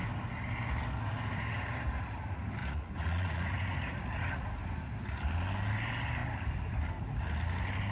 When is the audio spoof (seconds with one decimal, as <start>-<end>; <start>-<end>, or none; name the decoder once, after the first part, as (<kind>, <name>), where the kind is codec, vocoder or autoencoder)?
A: 2.6-4.5 (vocoder, Vocos)

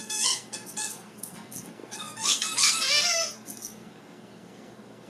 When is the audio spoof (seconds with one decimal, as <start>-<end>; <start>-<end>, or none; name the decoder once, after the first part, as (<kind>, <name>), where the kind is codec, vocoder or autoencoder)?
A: 0.0-5.1 (codec, SNAC)

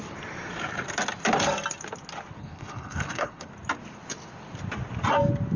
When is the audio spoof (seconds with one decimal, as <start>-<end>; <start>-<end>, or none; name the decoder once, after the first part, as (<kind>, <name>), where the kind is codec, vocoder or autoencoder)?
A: 2.4-3.5 (codec, HILCodec)

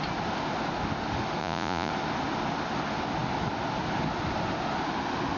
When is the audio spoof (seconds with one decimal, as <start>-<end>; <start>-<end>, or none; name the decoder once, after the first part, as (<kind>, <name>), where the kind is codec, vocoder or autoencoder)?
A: 1.4-1.9 (vocoder, Vocos)

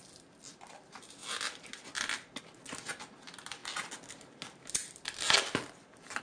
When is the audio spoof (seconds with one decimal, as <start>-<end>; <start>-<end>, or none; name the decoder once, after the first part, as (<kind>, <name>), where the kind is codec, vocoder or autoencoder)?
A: none

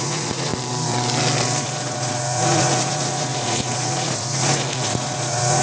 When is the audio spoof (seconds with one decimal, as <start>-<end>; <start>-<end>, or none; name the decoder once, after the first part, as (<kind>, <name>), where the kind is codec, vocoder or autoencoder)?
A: 0.0-0.5 (vocoder, Vocos); 1.6-5.6